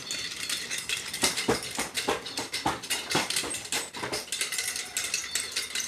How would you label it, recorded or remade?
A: recorded